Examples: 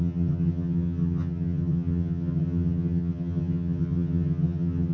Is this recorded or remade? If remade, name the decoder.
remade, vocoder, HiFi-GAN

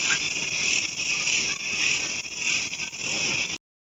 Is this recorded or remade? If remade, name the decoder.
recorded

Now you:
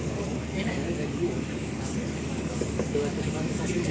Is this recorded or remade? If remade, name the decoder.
remade, codec, DAC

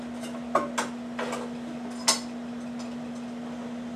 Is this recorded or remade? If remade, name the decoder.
recorded